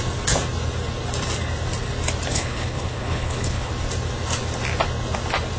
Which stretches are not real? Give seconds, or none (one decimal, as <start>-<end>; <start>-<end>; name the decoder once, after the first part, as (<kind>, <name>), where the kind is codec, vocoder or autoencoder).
2.3-3.7 (codec, HILCodec)